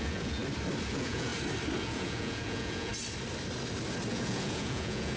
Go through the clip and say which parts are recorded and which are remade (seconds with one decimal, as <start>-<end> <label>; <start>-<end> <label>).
0.0-0.4 remade; 0.4-0.9 recorded; 0.9-1.3 remade; 1.3-1.8 recorded; 1.8-2.9 remade; 2.9-4.1 recorded; 4.1-5.2 remade